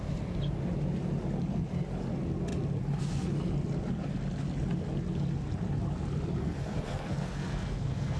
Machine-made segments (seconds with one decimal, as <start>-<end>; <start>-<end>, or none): 6.4-8.2